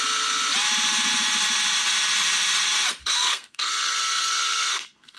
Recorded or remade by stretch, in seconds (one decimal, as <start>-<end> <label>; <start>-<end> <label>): 0.0-3.0 recorded; 3.0-5.2 remade